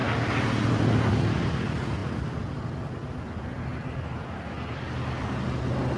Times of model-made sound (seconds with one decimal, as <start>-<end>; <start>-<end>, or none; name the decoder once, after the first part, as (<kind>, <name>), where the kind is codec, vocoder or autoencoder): none